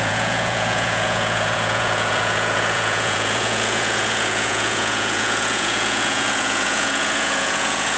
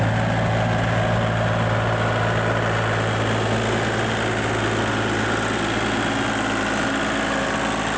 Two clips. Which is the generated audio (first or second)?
first